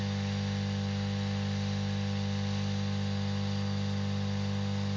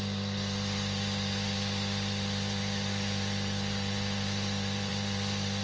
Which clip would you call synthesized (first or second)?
second